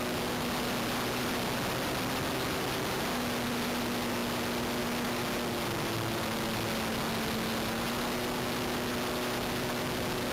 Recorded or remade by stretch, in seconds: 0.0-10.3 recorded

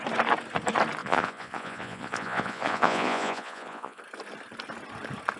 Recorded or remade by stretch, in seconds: 0.0-1.0 recorded; 1.0-4.0 remade; 4.0-5.4 recorded

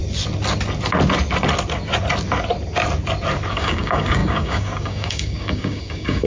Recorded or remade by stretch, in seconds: 0.0-3.5 recorded; 3.5-6.3 remade

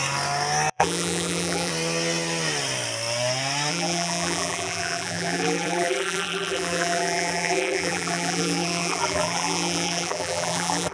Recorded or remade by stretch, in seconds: 0.0-0.7 recorded; 0.7-1.7 remade; 1.7-3.7 recorded; 3.7-10.9 remade